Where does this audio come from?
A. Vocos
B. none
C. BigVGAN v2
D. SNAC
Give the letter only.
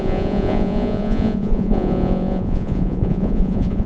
A